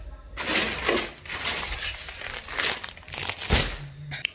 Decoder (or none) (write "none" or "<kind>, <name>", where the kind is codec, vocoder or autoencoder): none